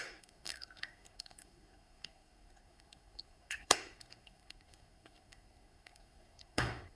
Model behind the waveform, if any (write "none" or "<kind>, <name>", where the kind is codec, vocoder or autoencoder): codec, SNAC